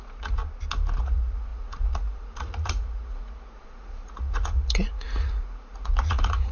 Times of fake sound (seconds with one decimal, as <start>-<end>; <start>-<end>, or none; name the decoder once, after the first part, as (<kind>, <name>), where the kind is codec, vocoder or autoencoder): 0.0-0.4 (vocoder, Vocos); 1.0-6.5